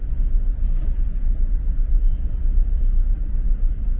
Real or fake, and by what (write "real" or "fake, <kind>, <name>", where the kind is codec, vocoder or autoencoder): real